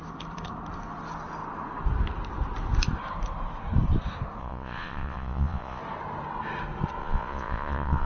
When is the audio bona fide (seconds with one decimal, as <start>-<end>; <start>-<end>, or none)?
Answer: 0.0-4.4; 5.8-7.0